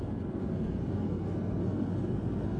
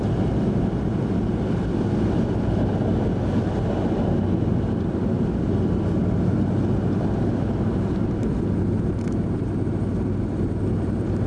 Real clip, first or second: second